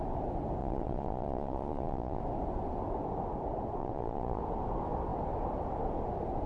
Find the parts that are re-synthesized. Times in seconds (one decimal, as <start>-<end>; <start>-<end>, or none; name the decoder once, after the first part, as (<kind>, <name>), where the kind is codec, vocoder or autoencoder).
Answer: 0.6-2.2 (vocoder, Vocos); 3.8-4.4